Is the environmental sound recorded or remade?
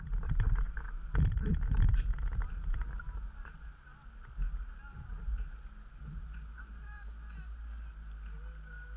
recorded